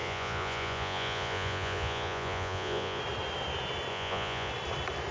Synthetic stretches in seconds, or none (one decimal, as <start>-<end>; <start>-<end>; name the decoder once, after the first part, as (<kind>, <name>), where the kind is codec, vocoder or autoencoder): 0.0-3.0 (vocoder, Vocos); 3.9-4.5